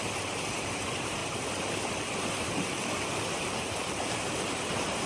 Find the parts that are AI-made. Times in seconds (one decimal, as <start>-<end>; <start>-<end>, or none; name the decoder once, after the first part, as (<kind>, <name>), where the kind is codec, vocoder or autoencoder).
0.0-1.2 (vocoder, BigVGAN v2); 4.3-5.1